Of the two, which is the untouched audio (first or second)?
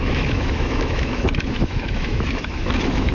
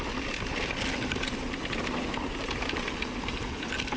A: second